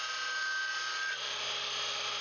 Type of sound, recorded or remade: recorded